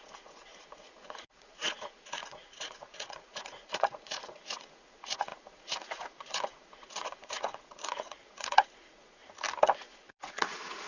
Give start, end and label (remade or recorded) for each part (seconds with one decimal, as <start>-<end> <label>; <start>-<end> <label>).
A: 0.0-9.2 remade; 9.2-9.8 recorded; 9.8-10.9 remade